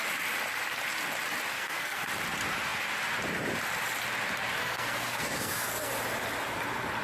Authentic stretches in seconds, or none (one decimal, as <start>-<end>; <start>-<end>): 0.0-1.5; 2.1-4.6; 5.9-7.0